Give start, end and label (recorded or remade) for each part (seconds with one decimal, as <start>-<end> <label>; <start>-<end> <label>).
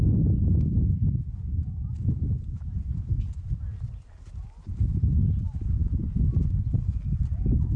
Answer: 0.0-7.8 recorded